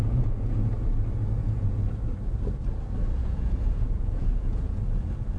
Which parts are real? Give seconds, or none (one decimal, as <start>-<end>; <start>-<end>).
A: 0.7-1.4; 1.9-3.2; 4.8-5.4

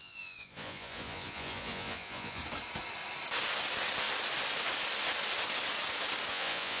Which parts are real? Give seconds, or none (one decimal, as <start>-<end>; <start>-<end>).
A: 2.4-6.3